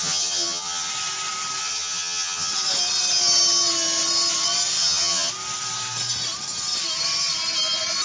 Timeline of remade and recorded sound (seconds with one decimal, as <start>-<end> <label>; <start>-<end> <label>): 0.0-0.9 remade; 0.9-1.6 recorded; 1.6-2.5 remade; 2.5-4.8 recorded; 4.8-5.3 remade; 5.3-8.0 recorded